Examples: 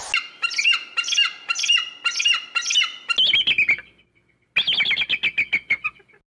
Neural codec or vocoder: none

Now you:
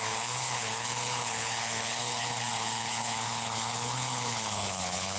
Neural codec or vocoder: codec, HILCodec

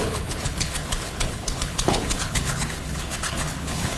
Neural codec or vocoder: codec, HILCodec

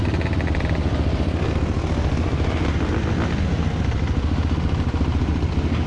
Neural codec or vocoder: none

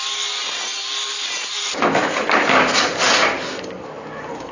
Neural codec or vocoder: none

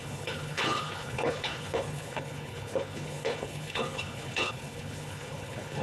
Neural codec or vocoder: codec, HILCodec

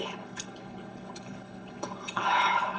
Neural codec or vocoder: codec, HILCodec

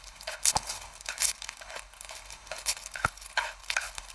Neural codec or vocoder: codec, HILCodec